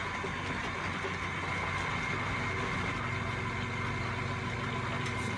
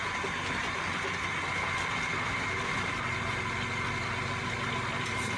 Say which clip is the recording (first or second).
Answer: first